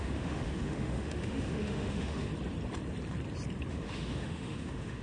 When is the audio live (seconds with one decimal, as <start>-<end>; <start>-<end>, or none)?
2.3-3.7